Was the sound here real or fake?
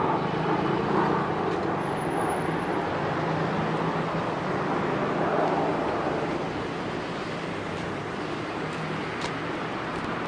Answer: real